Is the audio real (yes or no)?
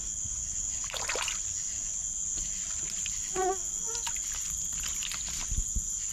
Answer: yes